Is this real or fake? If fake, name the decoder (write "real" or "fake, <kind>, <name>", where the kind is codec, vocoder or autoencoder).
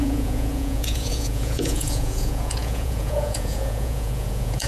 fake, vocoder, Vocos